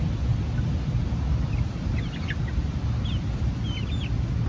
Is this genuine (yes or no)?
yes